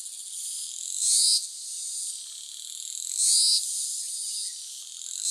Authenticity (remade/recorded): recorded